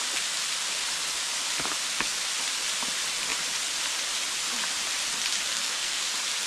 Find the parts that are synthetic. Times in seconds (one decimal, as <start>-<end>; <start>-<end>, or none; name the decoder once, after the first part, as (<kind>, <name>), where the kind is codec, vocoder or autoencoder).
5.5-6.0 (codec, SNAC)